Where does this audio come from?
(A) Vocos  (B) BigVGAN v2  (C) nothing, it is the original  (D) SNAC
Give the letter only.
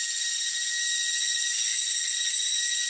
C